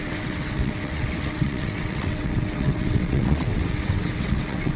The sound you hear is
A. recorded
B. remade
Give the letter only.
B